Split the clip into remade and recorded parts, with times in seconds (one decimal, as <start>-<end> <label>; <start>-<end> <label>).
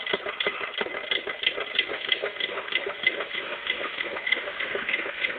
0.0-1.9 recorded; 1.9-5.4 remade